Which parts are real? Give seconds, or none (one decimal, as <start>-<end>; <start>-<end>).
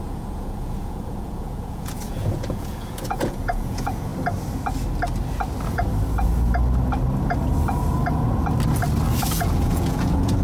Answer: 4.1-9.3